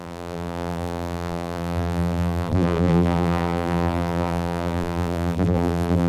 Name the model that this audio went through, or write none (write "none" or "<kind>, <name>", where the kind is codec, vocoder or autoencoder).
vocoder, BigVGAN v2